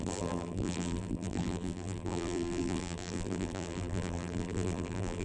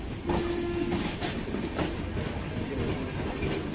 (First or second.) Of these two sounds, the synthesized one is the first